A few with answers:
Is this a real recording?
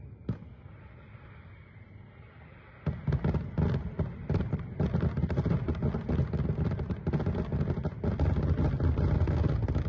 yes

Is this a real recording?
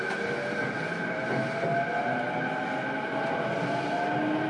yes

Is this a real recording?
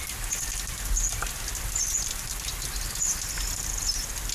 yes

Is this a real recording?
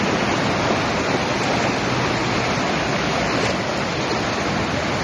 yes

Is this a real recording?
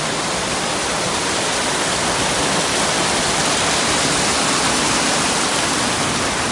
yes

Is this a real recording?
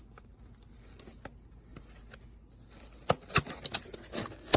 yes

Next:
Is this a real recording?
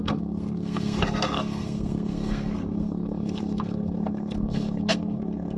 no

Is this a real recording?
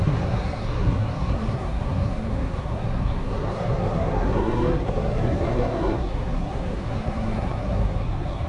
no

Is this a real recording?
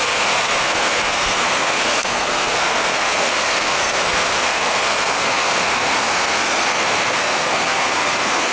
no